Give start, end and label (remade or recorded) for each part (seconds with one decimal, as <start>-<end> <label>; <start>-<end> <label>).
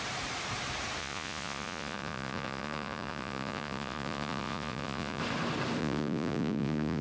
0.0-1.0 recorded; 1.0-5.2 remade; 5.2-5.8 recorded; 5.8-7.0 remade